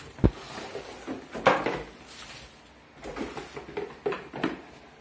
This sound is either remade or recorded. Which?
recorded